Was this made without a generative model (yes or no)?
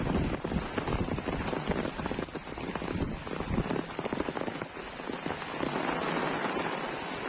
yes